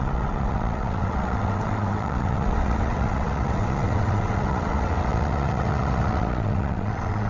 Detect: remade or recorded remade